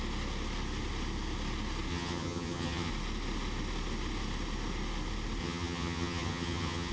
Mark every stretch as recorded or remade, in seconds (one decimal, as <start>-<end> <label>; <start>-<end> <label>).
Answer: 0.0-1.9 recorded; 1.9-2.9 remade; 2.9-5.4 recorded; 5.4-6.9 remade